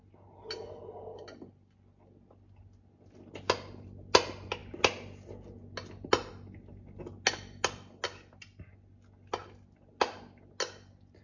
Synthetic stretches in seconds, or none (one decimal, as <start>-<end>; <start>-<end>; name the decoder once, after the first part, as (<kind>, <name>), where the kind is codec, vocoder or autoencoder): none